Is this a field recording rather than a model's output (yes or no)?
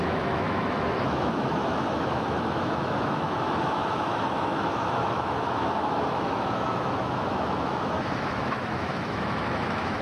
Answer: no